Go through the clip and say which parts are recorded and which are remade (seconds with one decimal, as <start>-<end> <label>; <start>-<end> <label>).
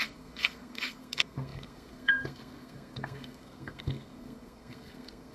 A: 0.0-5.3 remade